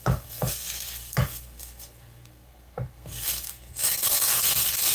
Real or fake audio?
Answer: fake